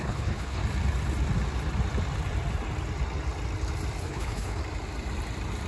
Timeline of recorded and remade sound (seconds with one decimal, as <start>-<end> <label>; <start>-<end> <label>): 0.0-0.6 remade; 0.6-4.0 recorded; 4.0-4.6 remade; 4.6-5.7 recorded